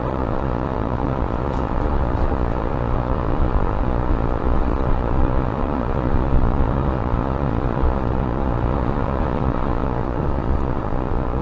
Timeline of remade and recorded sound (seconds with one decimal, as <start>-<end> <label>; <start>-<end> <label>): 0.0-11.4 remade